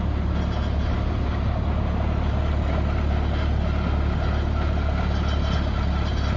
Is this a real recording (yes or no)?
yes